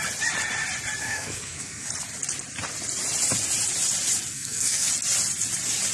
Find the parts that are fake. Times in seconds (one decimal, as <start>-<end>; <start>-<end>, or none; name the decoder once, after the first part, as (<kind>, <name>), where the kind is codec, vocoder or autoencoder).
1.0-1.9 (codec, SNAC); 4.3-4.9